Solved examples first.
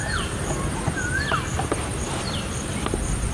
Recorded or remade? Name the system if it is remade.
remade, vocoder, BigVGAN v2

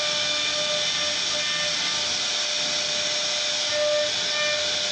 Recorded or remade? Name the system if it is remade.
recorded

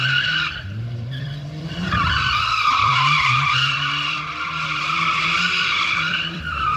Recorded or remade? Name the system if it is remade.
remade, vocoder, BigVGAN v2